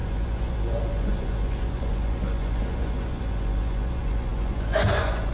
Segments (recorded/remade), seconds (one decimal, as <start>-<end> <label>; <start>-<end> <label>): 0.0-5.3 remade